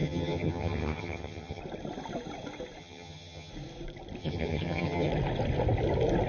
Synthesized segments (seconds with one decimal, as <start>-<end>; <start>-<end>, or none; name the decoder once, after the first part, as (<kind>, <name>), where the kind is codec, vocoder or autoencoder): 0.0-1.6 (vocoder, HiFi-GAN); 2.8-3.5; 4.2-5.1